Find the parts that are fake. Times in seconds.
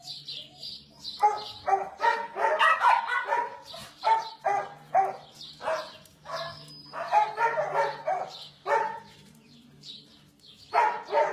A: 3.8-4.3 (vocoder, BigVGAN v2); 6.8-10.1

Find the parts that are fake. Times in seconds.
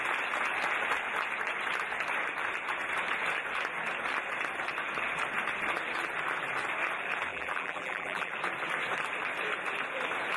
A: 7.3-8.3 (vocoder, BigVGAN v2)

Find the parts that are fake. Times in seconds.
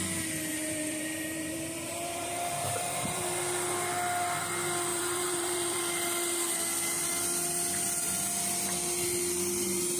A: 0.5-3.2 (vocoder, BigVGAN v2); 4.9-5.8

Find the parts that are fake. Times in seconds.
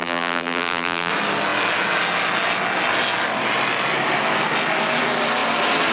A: 0.0-1.1 (vocoder, BigVGAN v2)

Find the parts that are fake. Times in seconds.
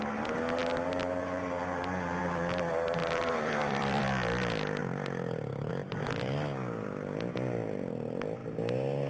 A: 3.0-4.0 (vocoder, BigVGAN v2); 4.8-5.7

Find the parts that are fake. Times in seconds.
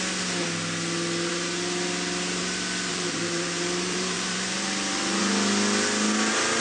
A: 2.9-5.2 (vocoder, BigVGAN v2)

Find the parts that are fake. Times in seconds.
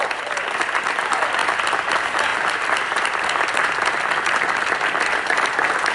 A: 0.0-2.3 (vocoder, BigVGAN v2); 3.2-5.9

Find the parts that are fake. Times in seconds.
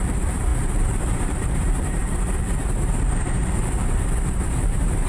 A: 0.0-5.1 (vocoder, BigVGAN v2)